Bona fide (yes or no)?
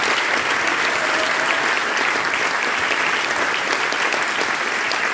yes